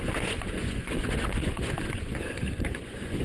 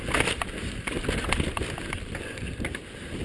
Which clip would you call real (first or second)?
second